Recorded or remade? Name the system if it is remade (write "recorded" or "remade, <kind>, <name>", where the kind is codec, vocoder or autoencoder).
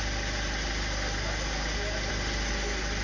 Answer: recorded